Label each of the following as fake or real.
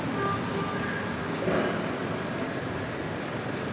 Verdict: real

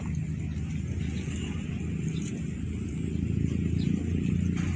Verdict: real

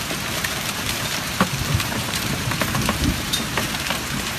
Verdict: fake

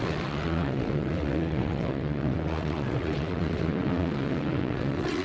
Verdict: fake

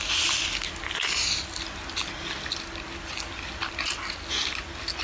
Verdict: real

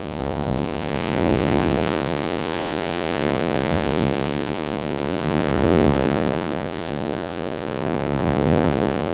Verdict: fake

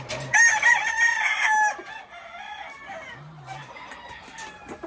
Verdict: real